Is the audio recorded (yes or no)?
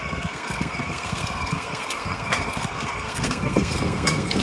no